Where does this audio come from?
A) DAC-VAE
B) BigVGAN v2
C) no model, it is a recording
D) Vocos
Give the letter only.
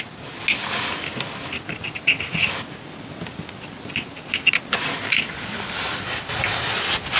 C